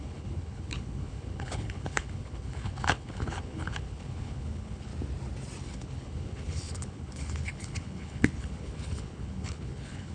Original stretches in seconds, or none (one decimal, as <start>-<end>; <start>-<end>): 4.9-5.6